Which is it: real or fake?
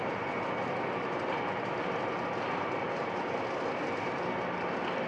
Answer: real